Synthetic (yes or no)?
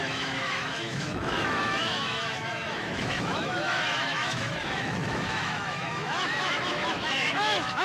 yes